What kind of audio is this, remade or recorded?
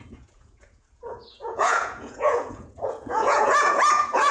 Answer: remade